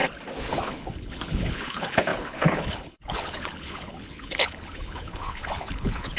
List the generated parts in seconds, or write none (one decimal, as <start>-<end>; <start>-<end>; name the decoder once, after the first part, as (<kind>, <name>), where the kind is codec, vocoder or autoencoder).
0.5-6.2 (codec, HILCodec)